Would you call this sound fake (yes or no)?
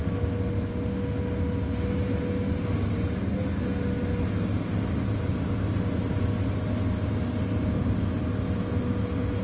no